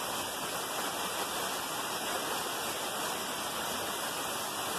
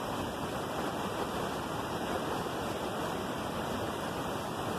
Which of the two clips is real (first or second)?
first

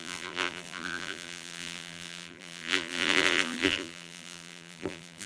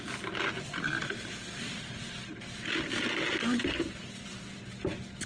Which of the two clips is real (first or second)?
second